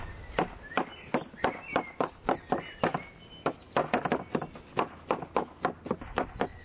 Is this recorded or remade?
recorded